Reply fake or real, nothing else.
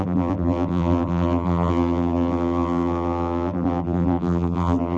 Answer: fake